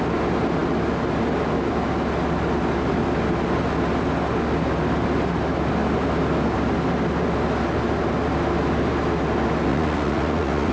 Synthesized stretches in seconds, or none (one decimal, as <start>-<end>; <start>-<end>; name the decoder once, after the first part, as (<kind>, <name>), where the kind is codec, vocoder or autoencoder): 9.7-10.7 (vocoder, Vocos)